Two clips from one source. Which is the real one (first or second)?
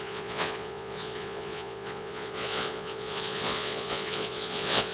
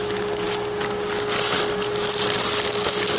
second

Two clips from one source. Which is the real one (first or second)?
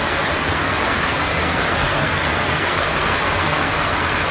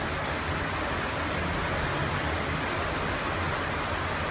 second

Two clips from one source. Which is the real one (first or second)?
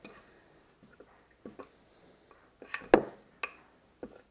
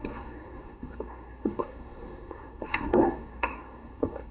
first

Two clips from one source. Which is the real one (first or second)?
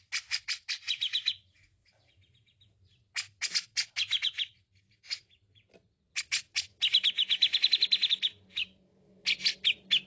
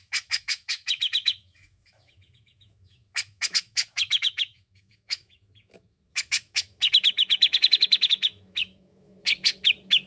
first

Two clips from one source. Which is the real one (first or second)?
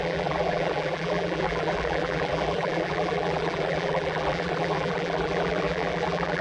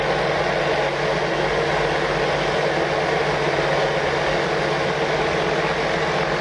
second